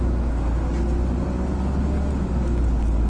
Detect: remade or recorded recorded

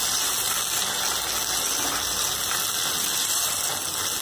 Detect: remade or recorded recorded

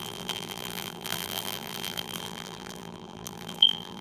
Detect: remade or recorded remade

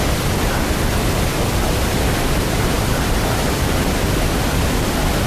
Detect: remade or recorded recorded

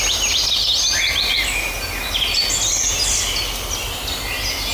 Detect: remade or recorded recorded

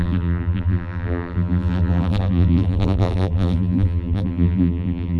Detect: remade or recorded remade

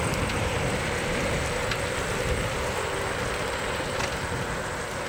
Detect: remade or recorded remade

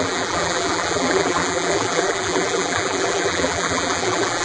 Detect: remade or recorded remade